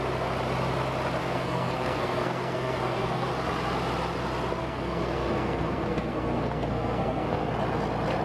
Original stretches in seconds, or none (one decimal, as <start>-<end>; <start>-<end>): 0.0-1.2; 3.3-4.6; 7.5-8.2